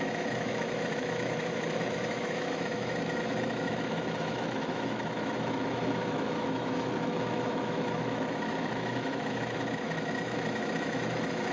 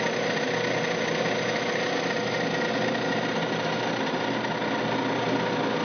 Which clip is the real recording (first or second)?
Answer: second